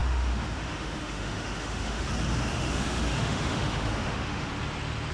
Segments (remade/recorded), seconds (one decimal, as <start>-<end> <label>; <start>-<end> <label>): 0.0-2.1 remade; 2.1-2.5 recorded; 2.5-4.5 remade; 4.5-5.1 recorded